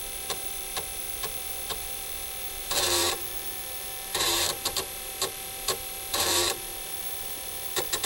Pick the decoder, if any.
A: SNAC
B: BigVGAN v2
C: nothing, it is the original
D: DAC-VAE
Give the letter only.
B